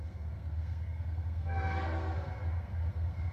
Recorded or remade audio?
remade